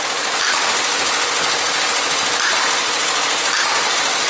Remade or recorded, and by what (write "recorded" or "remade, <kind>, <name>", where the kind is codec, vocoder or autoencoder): recorded